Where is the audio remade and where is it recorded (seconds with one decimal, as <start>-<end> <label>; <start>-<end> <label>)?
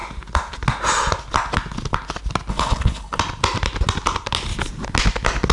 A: 0.0-2.5 recorded; 2.5-3.2 remade; 3.2-5.5 recorded